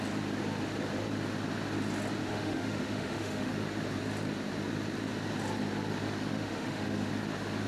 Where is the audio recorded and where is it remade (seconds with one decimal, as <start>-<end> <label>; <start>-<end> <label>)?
0.0-2.2 recorded; 2.2-3.5 remade; 3.5-6.3 recorded; 6.3-7.1 remade; 7.1-7.7 recorded